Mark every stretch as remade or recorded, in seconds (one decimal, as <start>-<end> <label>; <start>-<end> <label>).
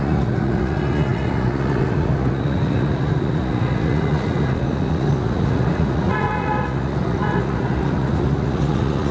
0.0-9.1 remade